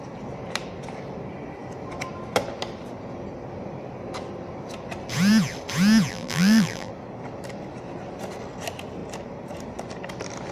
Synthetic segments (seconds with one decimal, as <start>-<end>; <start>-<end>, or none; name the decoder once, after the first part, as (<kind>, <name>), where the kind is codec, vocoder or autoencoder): 6.1-6.9 (vocoder, BigVGAN v2)

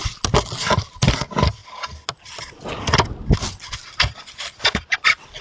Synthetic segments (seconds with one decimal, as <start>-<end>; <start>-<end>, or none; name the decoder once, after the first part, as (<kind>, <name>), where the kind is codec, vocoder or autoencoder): none